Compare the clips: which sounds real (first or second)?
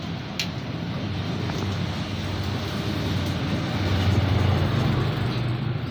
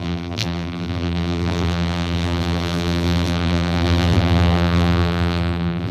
first